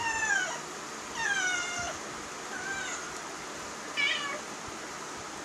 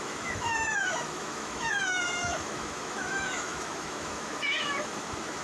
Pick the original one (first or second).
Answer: first